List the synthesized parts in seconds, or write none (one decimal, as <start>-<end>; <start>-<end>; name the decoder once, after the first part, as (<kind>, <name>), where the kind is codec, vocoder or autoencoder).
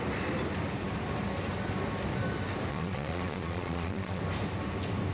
2.7-4.2 (vocoder, Vocos)